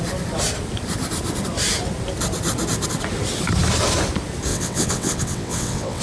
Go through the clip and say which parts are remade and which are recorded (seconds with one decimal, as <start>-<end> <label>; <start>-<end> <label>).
0.0-4.5 recorded; 4.5-6.0 remade